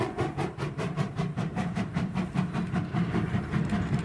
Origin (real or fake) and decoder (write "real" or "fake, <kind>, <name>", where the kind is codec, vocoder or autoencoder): fake, vocoder, BigVGAN v2